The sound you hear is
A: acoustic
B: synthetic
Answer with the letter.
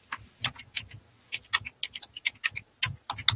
A